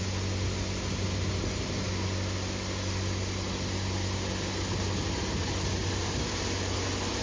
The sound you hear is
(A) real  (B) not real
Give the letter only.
A